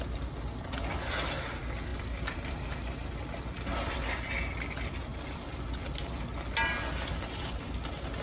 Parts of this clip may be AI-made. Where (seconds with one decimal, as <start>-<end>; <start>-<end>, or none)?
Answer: 1.9-2.7; 5.1-6.2